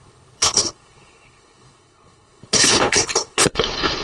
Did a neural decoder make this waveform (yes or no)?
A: yes